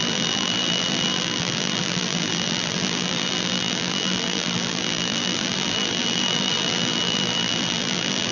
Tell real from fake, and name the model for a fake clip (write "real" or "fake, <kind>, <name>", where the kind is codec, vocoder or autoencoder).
fake, vocoder, BigVGAN v2